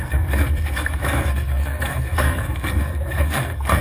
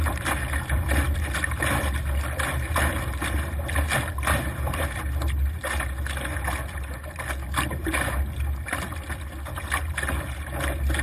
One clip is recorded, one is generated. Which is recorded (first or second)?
second